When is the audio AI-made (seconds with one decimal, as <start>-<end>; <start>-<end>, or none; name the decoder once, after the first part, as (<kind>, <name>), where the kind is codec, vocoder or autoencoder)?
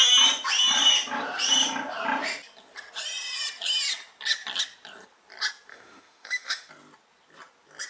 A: 5.7-6.7 (autoencoder, DAC-VAE)